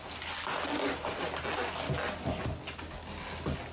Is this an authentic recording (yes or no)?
yes